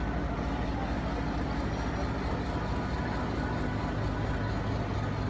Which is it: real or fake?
real